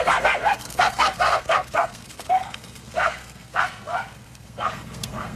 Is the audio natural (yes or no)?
no